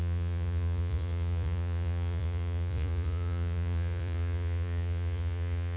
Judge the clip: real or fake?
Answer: fake